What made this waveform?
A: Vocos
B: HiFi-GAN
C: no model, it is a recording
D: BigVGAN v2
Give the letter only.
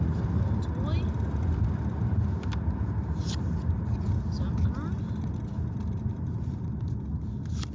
C